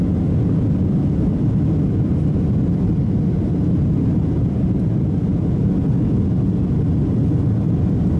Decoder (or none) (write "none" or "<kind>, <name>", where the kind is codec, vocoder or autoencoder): none